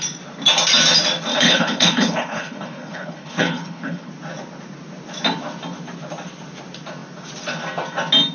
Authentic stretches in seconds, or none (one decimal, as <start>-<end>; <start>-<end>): 0.0-1.3; 4.1-8.3